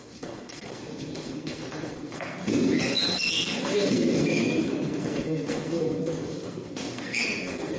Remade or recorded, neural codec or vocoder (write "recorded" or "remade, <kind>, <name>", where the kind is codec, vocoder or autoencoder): remade, codec, SNAC